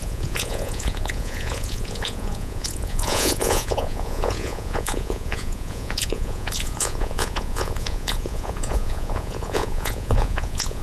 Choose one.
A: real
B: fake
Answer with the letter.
B